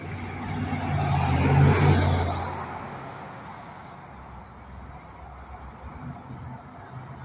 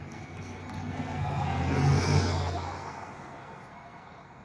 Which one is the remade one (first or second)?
second